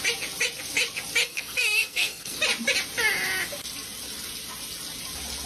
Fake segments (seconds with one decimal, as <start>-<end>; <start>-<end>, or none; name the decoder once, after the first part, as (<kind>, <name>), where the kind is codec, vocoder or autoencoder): 1.2-2.4 (codec, SNAC)